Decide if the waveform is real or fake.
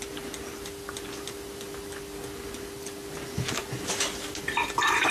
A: real